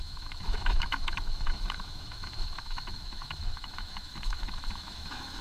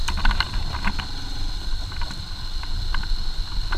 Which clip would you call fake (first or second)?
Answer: first